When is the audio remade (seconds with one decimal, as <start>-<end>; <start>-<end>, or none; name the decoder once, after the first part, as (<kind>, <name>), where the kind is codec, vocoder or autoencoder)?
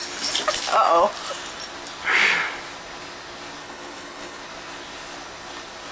3.6-4.4 (codec, HILCodec)